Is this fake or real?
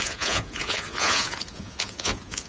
fake